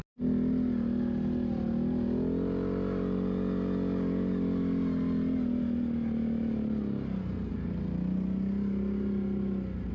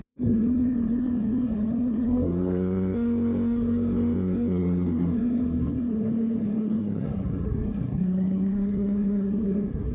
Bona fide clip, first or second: first